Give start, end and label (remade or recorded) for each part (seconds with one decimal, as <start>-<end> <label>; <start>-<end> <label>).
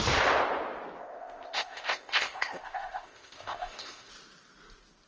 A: 0.0-1.0 recorded; 1.0-4.1 remade; 4.1-5.1 recorded